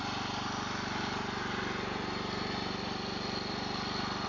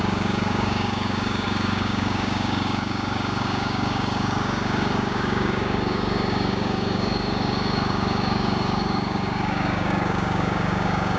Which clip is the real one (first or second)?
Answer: first